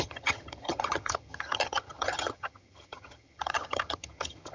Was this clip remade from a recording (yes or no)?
yes